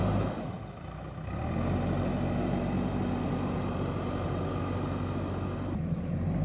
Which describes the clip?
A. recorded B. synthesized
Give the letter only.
A